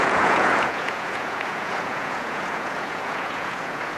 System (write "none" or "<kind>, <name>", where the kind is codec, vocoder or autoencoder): vocoder, Vocos